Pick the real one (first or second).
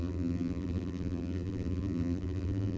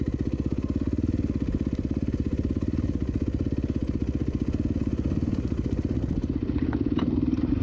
second